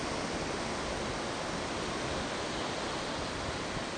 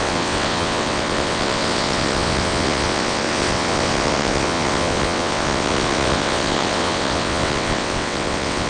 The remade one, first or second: second